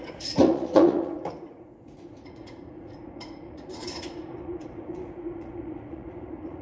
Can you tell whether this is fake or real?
fake